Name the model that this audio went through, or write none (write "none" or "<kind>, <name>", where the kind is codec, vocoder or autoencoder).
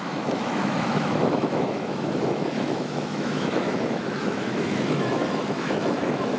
autoencoder, DAC-VAE